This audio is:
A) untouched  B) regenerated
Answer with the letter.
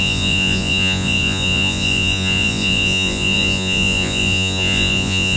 B